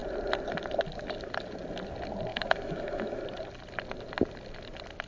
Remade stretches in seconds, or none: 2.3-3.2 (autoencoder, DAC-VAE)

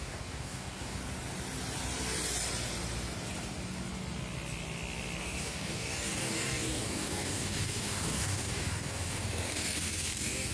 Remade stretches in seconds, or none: 0.0-1.0 (codec, DAC); 5.2-10.5

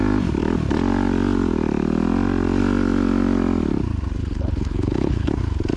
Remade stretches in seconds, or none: 4.2-5.3 (codec, HILCodec)